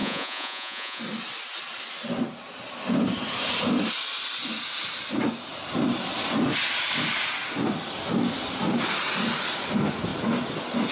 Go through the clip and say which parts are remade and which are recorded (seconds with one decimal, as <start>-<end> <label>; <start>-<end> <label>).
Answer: 0.0-1.0 remade; 1.0-10.9 recorded